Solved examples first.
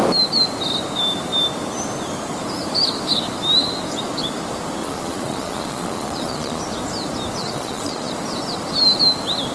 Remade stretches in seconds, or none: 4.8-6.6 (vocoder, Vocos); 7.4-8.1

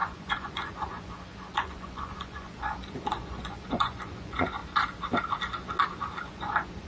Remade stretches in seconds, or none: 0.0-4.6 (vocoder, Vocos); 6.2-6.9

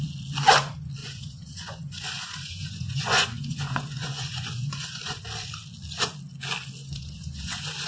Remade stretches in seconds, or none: 1.0-5.2 (vocoder, Vocos); 6.8-7.9